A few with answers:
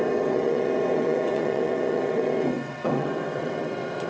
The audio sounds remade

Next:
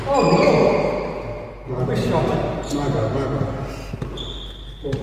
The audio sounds recorded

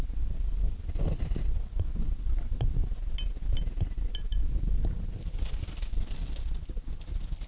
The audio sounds recorded